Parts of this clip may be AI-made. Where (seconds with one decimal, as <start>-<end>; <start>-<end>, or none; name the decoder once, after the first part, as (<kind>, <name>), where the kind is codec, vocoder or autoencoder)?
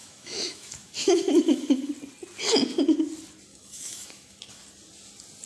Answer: 0.0-1.9 (autoencoder, DAC-VAE); 3.5-4.6